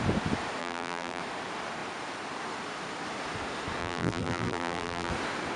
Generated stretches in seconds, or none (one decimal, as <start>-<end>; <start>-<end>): 0.6-1.2; 3.8-5.1